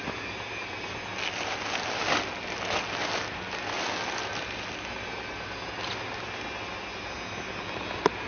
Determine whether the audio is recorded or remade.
recorded